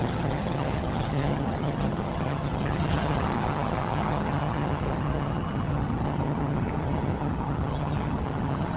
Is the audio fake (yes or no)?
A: yes